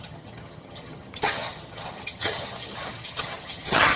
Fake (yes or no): yes